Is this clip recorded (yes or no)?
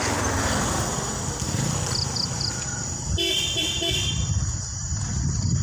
yes